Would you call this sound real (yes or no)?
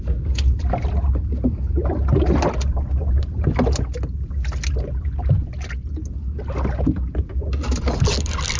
yes